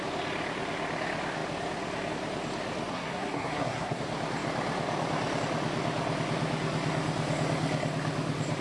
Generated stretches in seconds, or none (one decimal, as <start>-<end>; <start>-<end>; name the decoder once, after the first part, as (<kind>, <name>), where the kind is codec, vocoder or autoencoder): 2.9-4.0 (codec, SNAC)